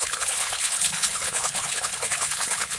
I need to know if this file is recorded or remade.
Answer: remade